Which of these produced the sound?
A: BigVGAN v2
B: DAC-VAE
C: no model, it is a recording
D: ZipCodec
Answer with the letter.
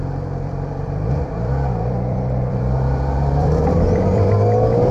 A